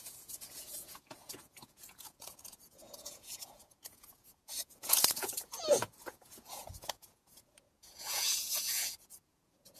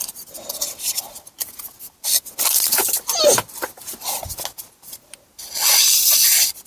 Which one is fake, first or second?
first